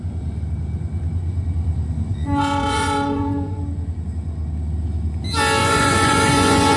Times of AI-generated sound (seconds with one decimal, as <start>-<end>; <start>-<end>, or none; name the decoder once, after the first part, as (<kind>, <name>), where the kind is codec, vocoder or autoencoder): 2.1-3.6 (vocoder, Vocos); 5.6-6.8

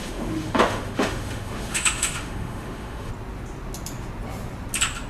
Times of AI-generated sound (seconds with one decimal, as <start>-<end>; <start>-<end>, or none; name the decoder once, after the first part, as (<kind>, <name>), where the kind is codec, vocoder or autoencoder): 0.0-3.1 (autoencoder, DAC-VAE)

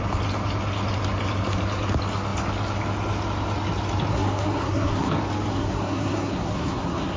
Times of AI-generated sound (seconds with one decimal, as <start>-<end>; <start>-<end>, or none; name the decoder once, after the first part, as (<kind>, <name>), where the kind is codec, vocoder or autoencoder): 4.1-5.1 (codec, SNAC); 5.5-7.2

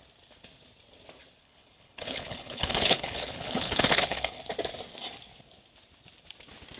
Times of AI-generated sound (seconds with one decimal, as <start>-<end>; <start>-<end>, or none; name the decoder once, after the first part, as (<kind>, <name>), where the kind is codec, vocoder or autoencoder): 1.4-4.4 (codec, HILCodec)